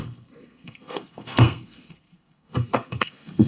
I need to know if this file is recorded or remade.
remade